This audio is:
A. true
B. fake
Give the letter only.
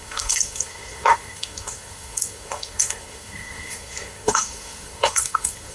B